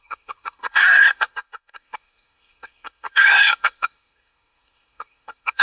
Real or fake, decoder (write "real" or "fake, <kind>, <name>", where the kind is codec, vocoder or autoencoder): fake, codec, SNAC